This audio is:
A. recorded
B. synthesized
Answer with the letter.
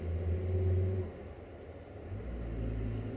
A